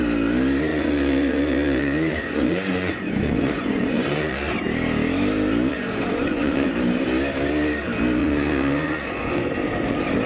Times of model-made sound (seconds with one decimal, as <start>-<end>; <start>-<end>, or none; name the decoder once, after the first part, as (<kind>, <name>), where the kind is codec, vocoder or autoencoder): 0.7-4.5 (vocoder, Vocos); 5.7-6.7; 8.2-9.5